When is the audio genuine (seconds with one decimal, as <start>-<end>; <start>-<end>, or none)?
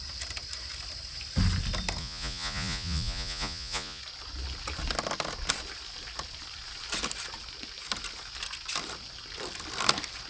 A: 0.0-2.0; 4.0-10.3